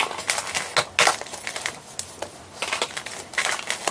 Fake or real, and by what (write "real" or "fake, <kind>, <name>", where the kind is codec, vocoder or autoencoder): real